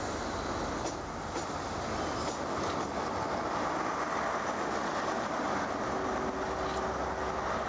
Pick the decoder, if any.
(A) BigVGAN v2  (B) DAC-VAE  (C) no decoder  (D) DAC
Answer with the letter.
C